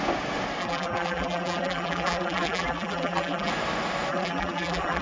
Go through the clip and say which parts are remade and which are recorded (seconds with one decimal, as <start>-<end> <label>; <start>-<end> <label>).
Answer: 0.0-0.6 recorded; 0.6-3.5 remade; 3.5-4.1 recorded; 4.1-5.0 remade